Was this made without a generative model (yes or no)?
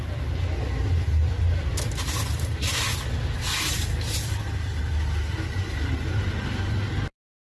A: no